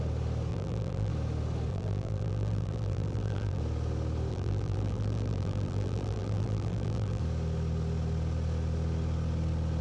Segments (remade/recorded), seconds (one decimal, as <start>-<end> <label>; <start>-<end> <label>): 0.0-0.5 recorded; 0.5-1.1 remade; 1.1-1.7 recorded; 1.7-3.6 remade; 3.6-4.3 recorded; 4.3-7.2 remade; 7.2-9.8 recorded